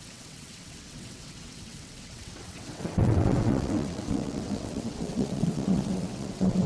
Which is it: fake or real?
fake